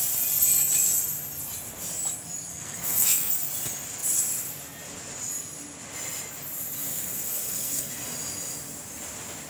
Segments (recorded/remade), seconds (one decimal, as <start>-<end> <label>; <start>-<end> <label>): 0.0-2.5 recorded; 2.5-3.3 remade; 3.3-6.9 recorded; 6.9-7.9 remade; 7.9-9.5 recorded